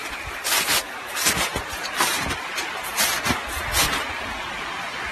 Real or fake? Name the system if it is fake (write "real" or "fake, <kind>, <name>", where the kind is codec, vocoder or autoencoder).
fake, vocoder, BigVGAN v2